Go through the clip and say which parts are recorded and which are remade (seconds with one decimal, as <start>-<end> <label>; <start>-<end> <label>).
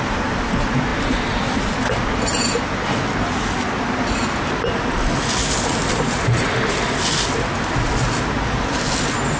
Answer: 0.0-9.4 recorded